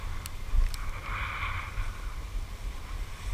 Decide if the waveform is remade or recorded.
recorded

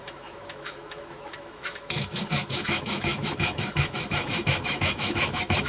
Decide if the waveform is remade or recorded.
remade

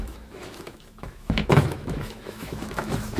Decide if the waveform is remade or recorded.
remade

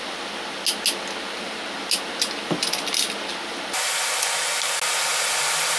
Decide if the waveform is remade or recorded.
recorded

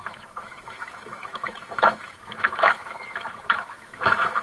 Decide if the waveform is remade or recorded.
remade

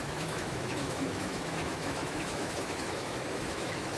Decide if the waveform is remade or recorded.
remade